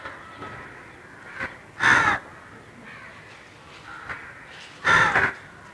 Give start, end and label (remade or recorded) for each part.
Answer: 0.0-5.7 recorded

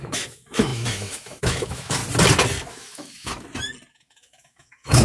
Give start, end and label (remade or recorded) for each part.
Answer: 0.0-2.0 remade; 2.0-2.7 recorded; 2.7-3.3 remade; 3.3-3.9 recorded; 3.9-5.0 remade

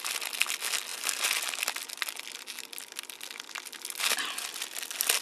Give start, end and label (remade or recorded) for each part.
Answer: 0.0-5.2 recorded

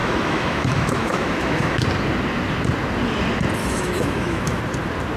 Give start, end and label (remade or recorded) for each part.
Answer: 0.0-1.8 remade; 1.8-3.6 recorded; 3.6-4.6 remade; 4.6-5.2 recorded